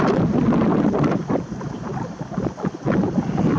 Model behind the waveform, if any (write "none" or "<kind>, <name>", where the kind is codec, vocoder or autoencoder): vocoder, BigVGAN v2